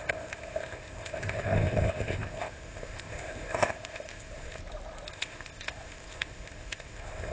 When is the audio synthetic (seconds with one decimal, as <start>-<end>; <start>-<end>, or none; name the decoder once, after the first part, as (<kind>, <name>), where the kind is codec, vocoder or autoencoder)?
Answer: 0.0-4.6 (codec, ZipCodec); 5.1-7.3